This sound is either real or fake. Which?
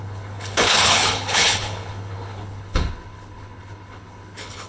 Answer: fake